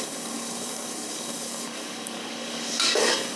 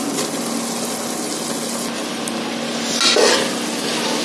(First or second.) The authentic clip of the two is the second